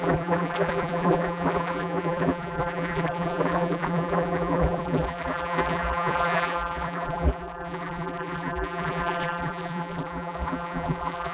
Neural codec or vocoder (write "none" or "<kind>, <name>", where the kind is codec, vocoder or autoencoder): vocoder, BigVGAN v2